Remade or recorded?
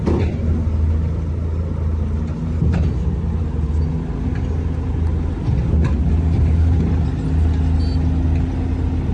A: recorded